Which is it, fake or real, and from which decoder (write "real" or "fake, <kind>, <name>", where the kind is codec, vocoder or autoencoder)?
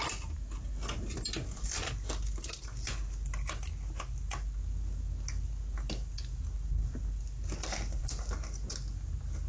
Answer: real